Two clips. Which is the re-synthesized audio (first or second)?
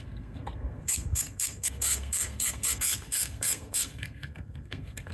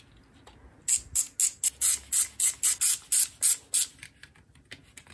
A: first